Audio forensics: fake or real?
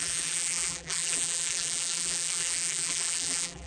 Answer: fake